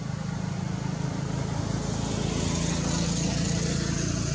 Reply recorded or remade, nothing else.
recorded